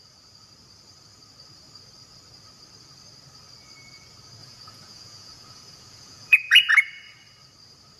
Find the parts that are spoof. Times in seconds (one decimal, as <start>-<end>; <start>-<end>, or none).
4.4-6.7